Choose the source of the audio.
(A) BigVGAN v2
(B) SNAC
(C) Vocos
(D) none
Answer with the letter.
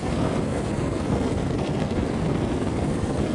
B